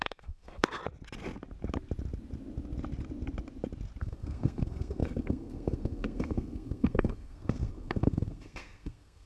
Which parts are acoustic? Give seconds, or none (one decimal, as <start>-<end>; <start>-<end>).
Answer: 0.8-4.0